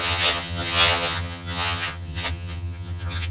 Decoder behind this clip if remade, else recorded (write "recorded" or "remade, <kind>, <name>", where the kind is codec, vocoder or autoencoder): remade, vocoder, HiFi-GAN